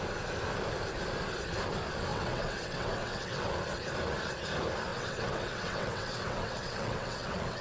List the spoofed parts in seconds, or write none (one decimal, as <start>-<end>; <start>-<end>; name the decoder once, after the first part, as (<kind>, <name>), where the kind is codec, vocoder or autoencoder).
2.1-3.5 (vocoder, WaveNeXt); 4.9-7.6